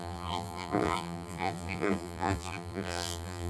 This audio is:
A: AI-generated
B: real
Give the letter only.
A